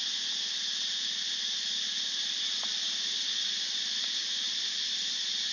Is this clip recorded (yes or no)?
yes